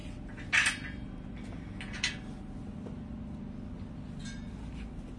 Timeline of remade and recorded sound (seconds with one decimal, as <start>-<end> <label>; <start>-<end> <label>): 0.0-5.2 recorded